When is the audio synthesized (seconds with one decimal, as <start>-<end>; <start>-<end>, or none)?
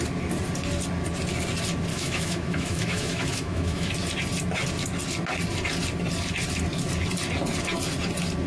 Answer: 1.9-3.9